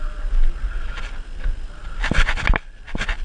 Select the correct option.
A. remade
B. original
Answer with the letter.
B